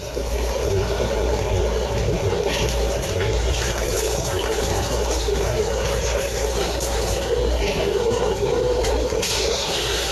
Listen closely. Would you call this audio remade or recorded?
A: remade